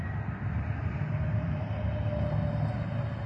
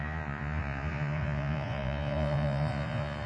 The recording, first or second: first